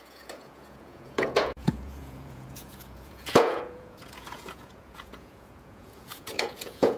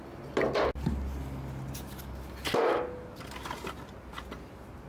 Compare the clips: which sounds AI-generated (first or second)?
first